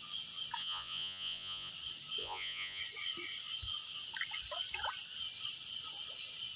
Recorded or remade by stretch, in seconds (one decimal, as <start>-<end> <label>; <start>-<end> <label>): 0.0-0.6 recorded; 0.6-1.7 remade; 1.7-2.2 recorded; 2.2-2.8 remade; 2.8-6.6 recorded